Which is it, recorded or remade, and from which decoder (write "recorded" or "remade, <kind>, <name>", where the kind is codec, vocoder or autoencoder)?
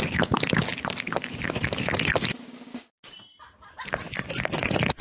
recorded